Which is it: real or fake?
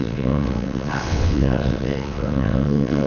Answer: fake